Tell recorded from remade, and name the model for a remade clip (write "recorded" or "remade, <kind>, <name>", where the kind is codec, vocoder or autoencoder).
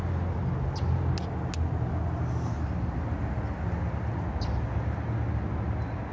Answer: recorded